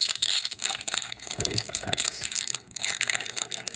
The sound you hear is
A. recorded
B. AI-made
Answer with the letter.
B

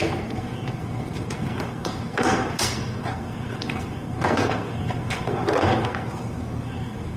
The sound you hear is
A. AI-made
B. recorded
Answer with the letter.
A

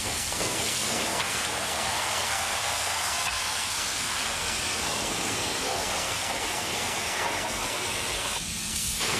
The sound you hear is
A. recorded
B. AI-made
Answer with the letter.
B